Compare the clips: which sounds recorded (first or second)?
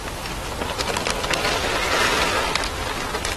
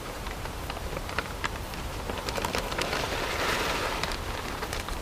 first